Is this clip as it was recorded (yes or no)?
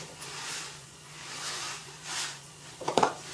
no